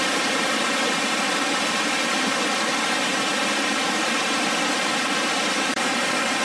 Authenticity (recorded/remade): remade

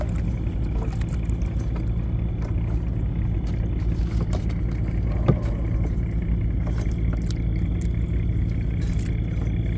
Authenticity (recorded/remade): recorded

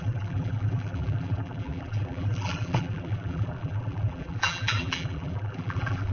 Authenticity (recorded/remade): remade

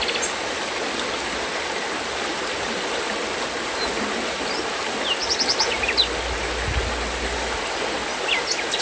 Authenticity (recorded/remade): recorded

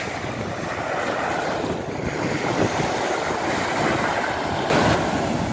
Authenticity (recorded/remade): recorded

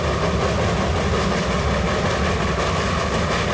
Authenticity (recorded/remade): recorded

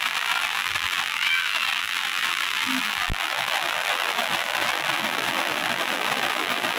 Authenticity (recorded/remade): remade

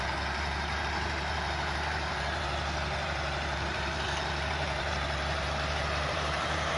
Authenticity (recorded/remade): remade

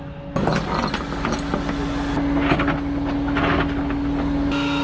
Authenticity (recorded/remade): recorded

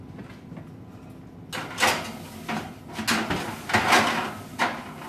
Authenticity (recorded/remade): recorded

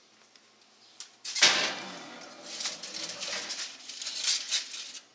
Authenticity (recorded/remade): recorded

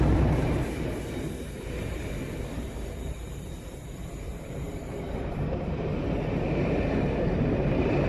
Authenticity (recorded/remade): remade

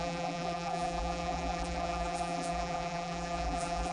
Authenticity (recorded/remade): remade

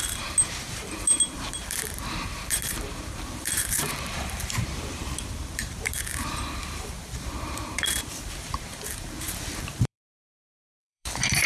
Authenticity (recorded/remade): remade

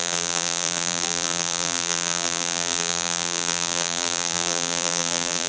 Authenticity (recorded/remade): remade